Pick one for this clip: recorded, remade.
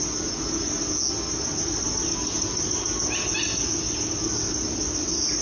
recorded